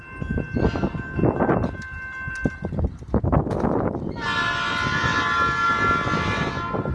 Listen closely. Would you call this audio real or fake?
real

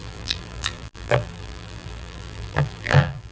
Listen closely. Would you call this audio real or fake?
fake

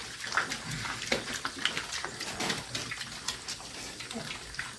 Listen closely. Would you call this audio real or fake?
real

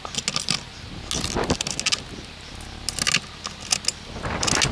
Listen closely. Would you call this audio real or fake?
real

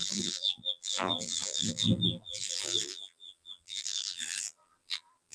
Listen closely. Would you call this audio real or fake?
fake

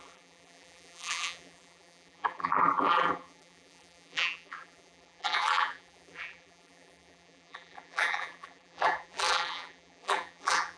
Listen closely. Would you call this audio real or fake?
fake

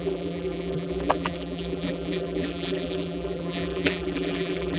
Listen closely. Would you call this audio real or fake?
fake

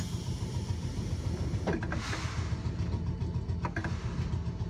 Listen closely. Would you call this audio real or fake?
real